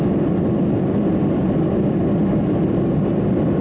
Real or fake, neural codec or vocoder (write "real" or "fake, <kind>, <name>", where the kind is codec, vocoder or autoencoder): real